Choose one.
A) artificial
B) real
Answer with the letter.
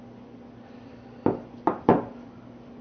B